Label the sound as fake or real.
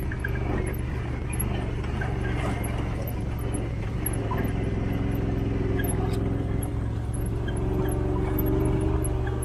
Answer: real